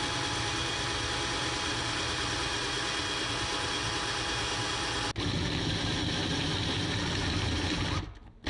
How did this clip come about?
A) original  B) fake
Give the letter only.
A